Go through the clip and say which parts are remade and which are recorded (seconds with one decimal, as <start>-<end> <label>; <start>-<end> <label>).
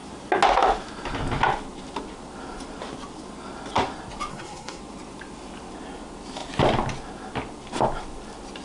0.0-4.3 recorded; 4.3-4.8 remade; 4.8-8.6 recorded